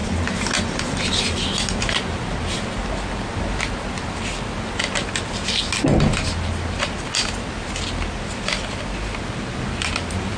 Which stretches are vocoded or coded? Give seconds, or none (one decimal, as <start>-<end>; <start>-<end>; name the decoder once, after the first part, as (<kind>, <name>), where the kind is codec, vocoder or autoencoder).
none